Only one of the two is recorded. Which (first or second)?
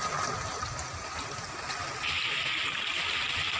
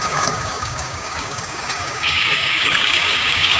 first